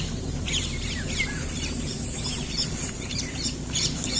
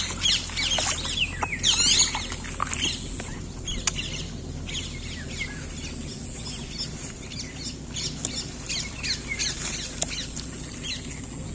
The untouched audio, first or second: second